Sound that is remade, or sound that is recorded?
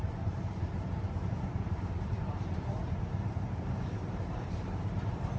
remade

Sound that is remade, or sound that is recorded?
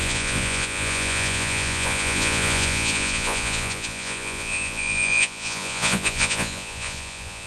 remade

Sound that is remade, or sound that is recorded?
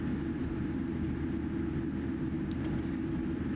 recorded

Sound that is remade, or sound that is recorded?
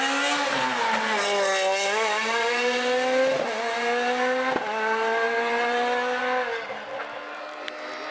recorded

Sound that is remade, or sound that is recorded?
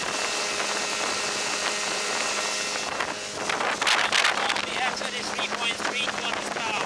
recorded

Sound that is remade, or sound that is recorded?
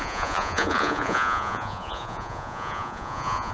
remade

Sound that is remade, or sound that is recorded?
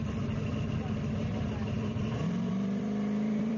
remade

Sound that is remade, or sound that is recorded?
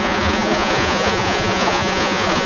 remade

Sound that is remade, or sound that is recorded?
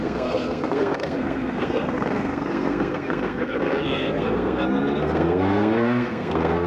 remade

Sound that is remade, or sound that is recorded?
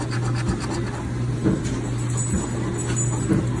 recorded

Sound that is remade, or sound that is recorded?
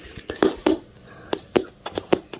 recorded